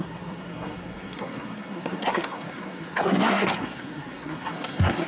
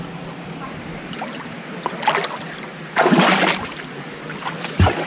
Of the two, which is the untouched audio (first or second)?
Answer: second